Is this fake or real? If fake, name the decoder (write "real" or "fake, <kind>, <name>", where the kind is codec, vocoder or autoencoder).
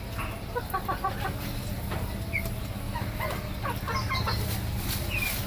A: real